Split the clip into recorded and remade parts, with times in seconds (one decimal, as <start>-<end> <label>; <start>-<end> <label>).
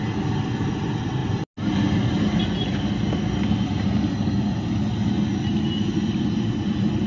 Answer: 0.0-7.1 recorded